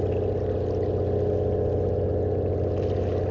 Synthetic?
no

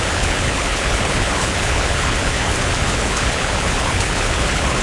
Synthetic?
yes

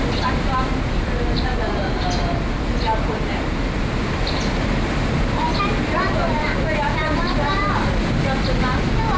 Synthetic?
no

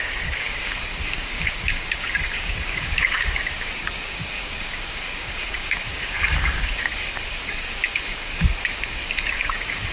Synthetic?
yes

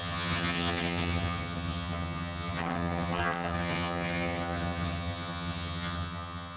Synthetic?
yes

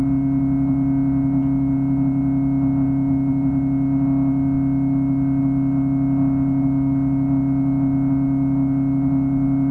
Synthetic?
no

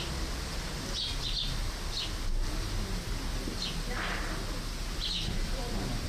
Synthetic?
no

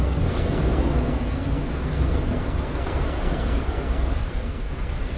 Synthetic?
yes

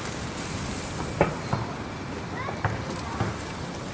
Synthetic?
no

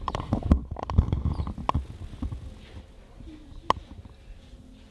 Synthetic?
no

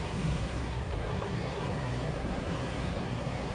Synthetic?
yes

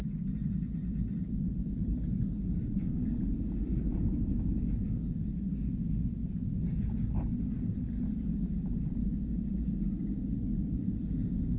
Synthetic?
no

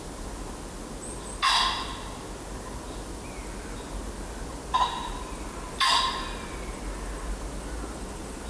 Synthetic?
no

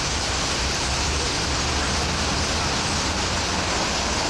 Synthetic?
no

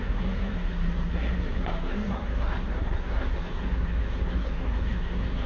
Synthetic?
yes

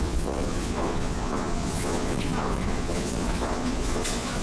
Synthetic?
yes